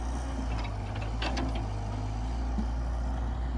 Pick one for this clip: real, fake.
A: real